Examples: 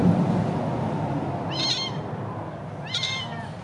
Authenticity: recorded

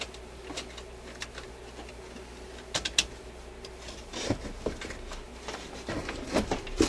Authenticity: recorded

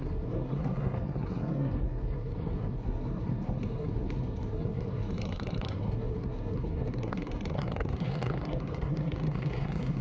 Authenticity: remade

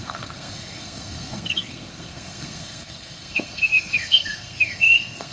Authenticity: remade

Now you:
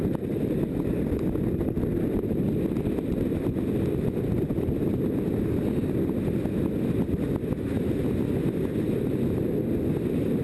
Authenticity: recorded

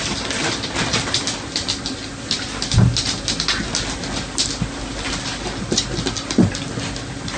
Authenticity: recorded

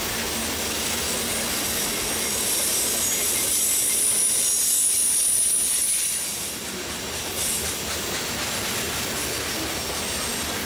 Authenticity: recorded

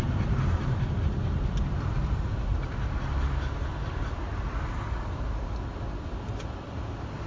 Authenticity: recorded